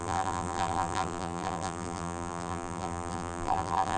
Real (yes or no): no